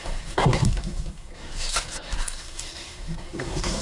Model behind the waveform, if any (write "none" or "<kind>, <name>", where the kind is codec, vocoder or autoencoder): codec, SNAC